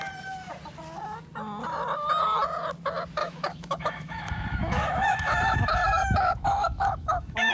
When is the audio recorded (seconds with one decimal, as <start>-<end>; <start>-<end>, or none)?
0.0-3.2